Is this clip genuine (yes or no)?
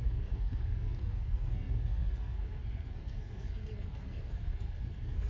no